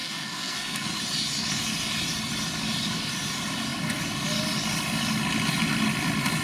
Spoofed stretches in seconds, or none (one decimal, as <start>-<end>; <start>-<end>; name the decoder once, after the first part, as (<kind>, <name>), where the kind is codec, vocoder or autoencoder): 0.0-1.0 (codec, SNAC)